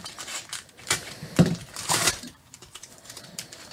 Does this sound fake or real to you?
fake